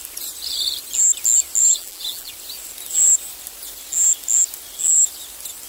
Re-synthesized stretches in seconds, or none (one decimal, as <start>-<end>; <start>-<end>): 1.6-2.3